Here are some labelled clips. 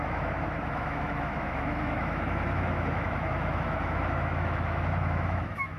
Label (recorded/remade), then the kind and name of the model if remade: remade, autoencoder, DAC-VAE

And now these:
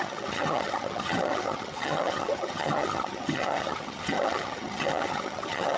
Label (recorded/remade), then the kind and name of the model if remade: remade, vocoder, HiFi-GAN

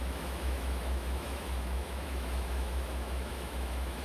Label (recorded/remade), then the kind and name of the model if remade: remade, autoencoder, DAC-VAE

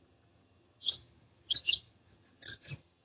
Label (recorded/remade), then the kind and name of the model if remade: remade, vocoder, HiFi-GAN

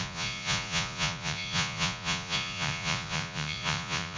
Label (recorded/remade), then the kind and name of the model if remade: remade, vocoder, Vocos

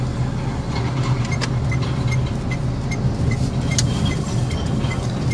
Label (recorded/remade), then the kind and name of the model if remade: recorded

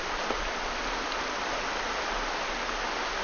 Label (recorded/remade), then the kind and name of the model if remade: recorded